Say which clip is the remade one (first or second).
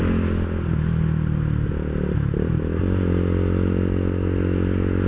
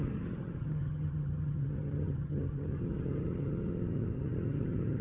second